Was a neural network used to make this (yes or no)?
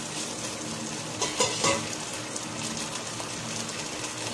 no